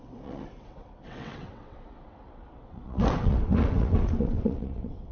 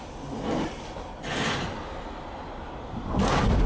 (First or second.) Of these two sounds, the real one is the second